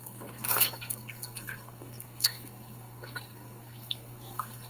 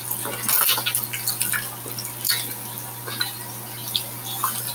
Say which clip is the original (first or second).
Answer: second